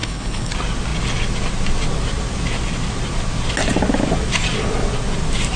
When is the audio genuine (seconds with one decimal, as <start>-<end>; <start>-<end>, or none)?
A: 0.5-5.6